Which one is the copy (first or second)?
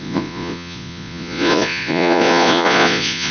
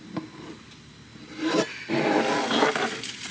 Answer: first